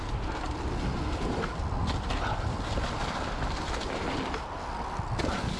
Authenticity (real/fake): real